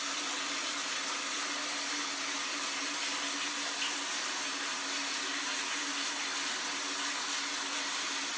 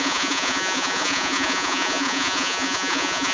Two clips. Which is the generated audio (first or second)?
second